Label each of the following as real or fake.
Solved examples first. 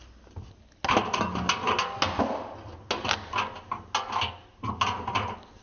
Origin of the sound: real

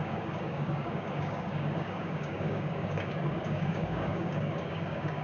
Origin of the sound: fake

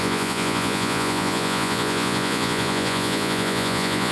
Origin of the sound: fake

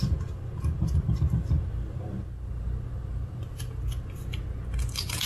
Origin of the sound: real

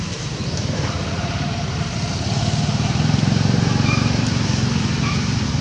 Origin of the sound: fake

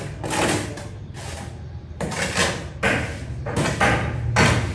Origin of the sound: real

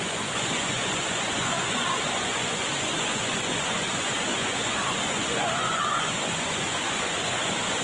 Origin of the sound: fake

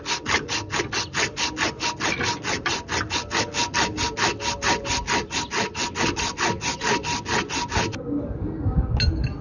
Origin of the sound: real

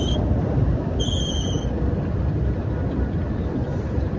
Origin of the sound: real